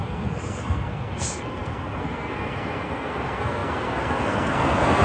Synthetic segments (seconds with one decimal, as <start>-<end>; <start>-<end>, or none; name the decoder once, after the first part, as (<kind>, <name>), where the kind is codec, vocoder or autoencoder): 0.0-5.0 (codec, SNAC)